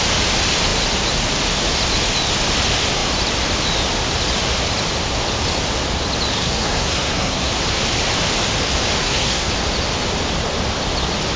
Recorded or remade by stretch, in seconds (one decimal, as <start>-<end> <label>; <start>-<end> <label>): 0.0-6.4 recorded; 6.4-7.5 remade; 7.5-9.0 recorded; 9.0-9.5 remade; 9.5-11.4 recorded